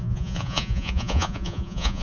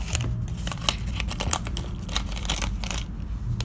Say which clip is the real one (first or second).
second